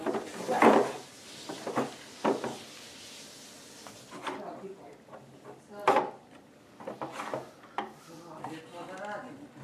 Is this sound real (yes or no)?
yes